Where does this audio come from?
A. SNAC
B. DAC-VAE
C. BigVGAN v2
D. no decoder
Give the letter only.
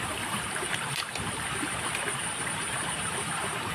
C